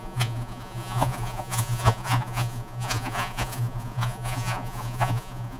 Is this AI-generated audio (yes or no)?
yes